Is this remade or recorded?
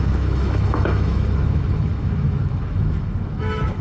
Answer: remade